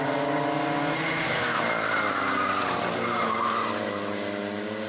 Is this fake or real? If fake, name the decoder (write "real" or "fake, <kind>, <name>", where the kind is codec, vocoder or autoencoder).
real